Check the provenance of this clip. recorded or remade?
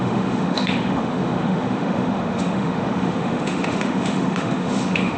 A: remade